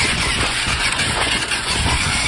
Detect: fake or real fake